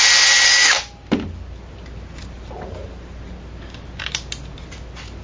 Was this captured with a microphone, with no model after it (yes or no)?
yes